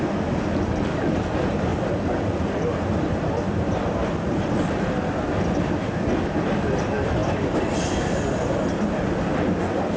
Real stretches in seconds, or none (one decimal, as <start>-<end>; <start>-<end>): 0.0-7.2; 9.6-10.0